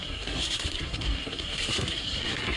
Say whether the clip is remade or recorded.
remade